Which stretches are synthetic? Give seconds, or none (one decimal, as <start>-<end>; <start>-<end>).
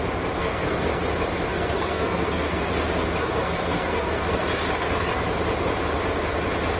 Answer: 0.4-1.0; 1.5-2.7; 3.2-4.4